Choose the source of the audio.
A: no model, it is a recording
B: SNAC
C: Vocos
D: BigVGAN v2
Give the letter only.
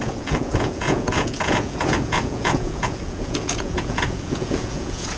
C